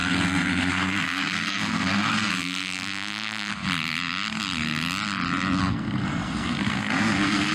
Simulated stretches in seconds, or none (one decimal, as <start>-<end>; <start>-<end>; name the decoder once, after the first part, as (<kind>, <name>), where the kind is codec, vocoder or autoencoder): 0.0-3.5 (codec, SNAC); 5.6-7.5